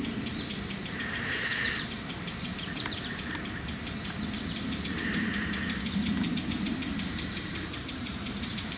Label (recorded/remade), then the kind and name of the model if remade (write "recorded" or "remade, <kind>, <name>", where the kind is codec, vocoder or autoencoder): remade, vocoder, BigVGAN v2